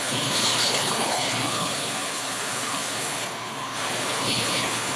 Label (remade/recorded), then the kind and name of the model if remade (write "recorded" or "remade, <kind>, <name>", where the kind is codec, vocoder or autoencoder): remade, codec, HILCodec